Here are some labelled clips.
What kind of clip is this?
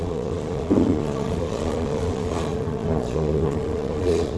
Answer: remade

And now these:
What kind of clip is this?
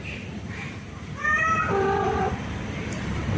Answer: remade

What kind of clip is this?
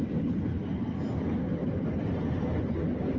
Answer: recorded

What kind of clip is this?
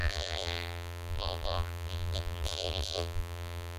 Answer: remade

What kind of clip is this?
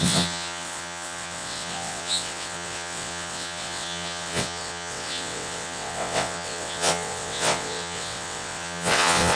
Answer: remade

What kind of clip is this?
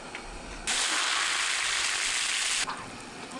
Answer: recorded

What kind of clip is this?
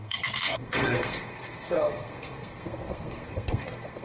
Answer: remade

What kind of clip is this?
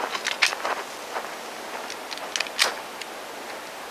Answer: recorded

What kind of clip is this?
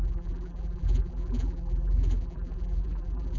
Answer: remade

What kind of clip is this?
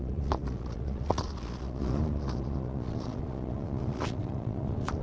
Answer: remade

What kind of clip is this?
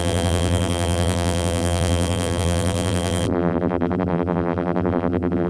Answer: remade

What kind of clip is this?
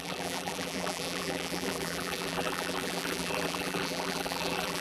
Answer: remade